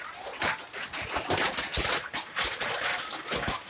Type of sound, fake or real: real